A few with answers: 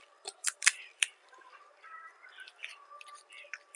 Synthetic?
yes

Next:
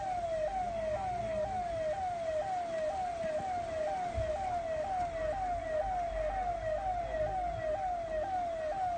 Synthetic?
no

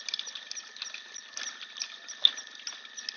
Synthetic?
no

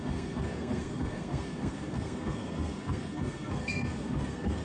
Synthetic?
yes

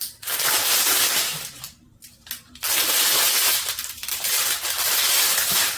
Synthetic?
yes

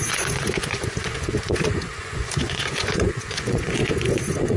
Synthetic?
yes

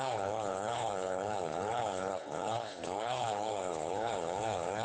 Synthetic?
yes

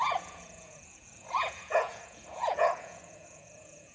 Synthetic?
yes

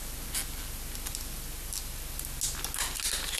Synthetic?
no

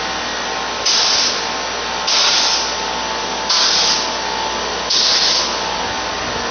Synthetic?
no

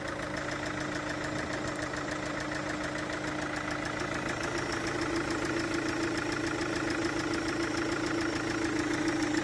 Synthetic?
no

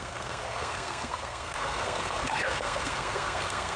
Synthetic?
yes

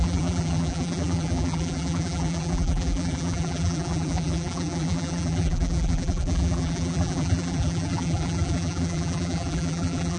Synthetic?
yes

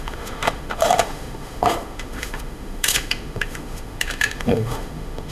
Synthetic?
yes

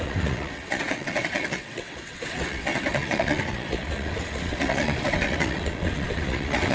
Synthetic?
yes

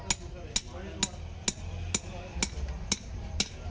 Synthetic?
no